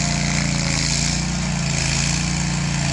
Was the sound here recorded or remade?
recorded